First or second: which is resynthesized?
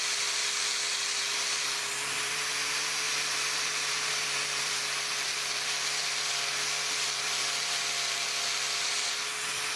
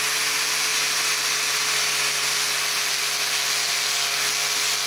first